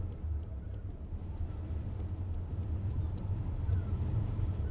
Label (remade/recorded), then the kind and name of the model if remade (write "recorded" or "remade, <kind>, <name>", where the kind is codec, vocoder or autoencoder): recorded